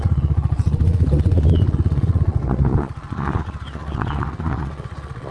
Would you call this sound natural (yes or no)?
no